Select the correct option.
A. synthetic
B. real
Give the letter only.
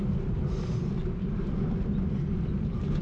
B